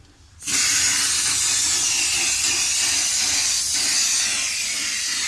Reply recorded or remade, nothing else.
recorded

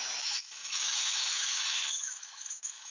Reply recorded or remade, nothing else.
remade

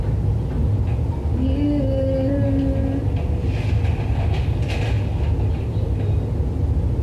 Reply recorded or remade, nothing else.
recorded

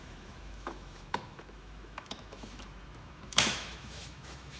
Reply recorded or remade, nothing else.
remade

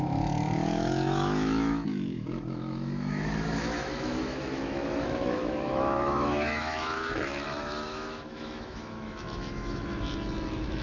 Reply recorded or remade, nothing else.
remade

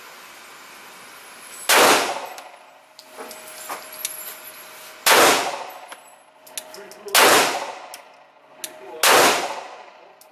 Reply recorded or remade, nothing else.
recorded